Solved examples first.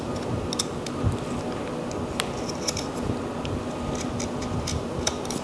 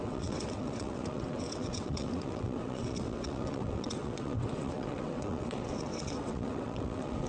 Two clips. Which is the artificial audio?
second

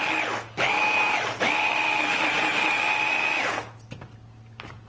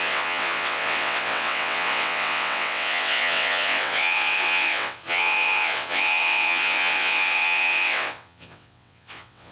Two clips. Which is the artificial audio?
second